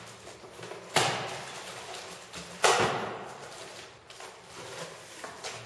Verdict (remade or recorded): recorded